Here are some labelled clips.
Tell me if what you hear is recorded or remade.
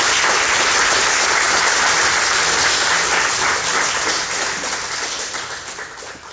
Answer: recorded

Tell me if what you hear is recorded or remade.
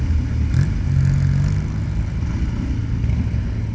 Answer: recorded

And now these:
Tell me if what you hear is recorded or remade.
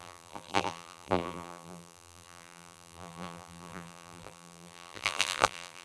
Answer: remade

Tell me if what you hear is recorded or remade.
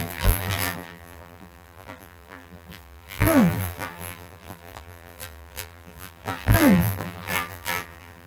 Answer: remade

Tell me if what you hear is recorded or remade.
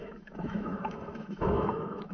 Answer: remade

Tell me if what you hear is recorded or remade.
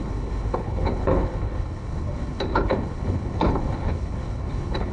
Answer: remade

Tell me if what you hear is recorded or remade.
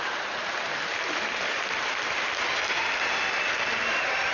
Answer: recorded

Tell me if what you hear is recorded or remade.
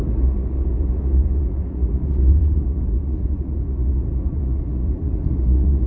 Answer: remade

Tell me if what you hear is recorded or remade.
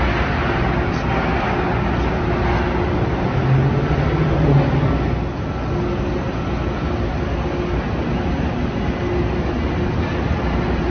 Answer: recorded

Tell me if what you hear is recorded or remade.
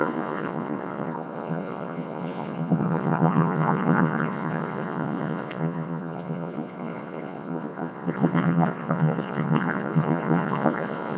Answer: remade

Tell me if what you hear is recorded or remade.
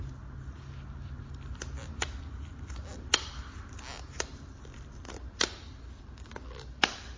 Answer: recorded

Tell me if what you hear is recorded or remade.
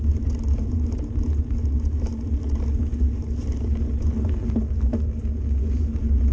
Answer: recorded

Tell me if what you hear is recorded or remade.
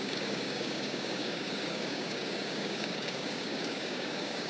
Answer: remade